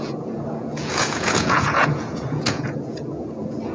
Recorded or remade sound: remade